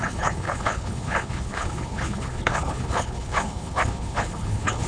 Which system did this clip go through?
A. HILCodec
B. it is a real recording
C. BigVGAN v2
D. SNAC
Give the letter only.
A